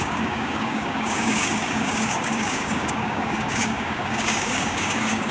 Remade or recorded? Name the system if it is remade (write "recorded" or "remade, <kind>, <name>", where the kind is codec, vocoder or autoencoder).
remade, codec, DAC